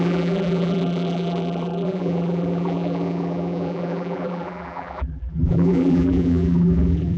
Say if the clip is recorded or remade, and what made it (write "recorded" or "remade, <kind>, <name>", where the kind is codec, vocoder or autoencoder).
remade, vocoder, BigVGAN v2